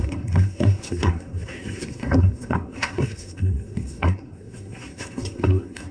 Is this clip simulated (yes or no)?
yes